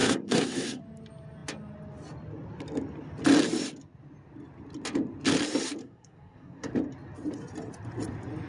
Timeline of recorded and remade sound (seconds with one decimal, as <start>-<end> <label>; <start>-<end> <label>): 0.0-0.8 remade; 0.8-5.8 recorded; 5.8-6.7 remade; 6.7-8.5 recorded